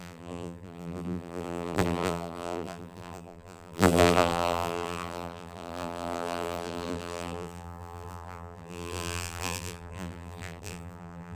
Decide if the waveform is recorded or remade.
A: remade